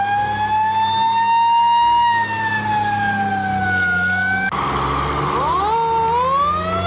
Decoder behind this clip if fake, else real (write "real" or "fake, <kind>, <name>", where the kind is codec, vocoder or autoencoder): real